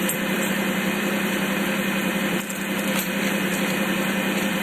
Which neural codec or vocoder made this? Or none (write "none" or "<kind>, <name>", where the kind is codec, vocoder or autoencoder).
vocoder, BigVGAN v2